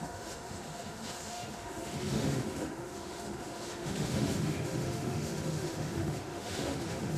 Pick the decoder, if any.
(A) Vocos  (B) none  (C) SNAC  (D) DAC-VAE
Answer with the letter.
D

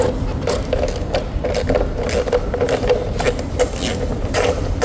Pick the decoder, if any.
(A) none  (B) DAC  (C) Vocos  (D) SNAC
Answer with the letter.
A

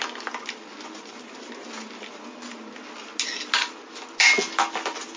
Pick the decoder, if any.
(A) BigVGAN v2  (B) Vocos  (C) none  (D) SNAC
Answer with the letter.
C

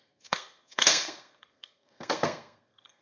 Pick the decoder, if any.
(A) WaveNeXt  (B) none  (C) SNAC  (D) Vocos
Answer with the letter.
C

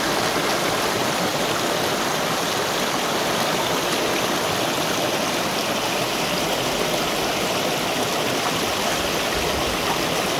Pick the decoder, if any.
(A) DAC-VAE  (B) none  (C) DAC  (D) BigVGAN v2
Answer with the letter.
B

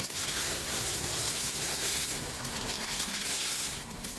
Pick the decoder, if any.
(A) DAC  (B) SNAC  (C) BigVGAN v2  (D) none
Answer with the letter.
B